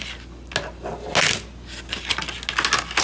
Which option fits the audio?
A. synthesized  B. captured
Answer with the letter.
B